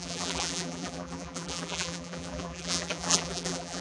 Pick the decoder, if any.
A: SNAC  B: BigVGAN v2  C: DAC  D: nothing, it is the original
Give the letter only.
B